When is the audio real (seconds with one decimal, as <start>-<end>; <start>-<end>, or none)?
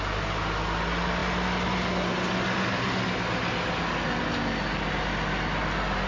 0.0-6.1